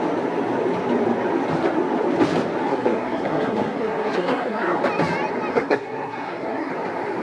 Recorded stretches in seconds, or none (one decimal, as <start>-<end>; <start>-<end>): 0.0-2.7; 4.8-5.5; 6.7-7.2